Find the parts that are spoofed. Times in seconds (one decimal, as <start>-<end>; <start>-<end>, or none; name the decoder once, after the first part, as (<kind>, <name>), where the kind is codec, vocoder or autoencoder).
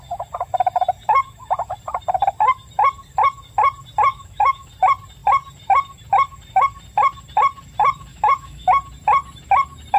4.1-4.7 (autoencoder, DAC-VAE); 8.1-8.8